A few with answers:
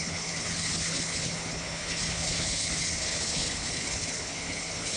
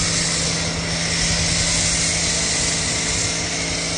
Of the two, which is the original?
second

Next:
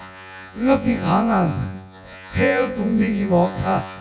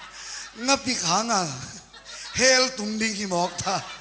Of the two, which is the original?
second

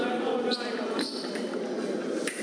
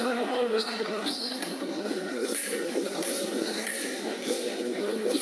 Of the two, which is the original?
first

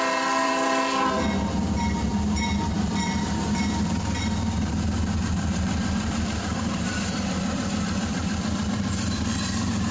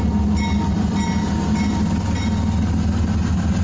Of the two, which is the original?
second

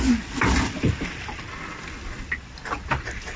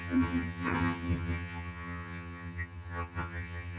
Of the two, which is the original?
first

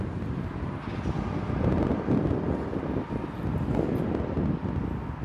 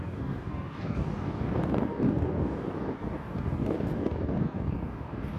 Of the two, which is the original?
first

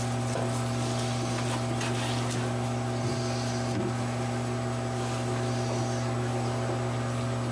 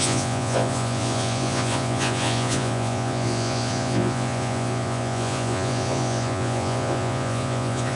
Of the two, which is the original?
first